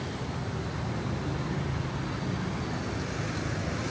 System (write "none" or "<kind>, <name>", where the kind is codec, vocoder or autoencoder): none